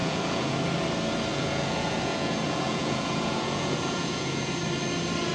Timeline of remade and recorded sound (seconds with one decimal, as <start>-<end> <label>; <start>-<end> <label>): 0.0-0.5 remade; 0.5-1.3 recorded; 1.3-4.5 remade; 4.5-5.3 recorded